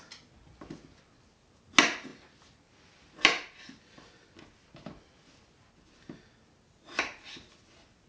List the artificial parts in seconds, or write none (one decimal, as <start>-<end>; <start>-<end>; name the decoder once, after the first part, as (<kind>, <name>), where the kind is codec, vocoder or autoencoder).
none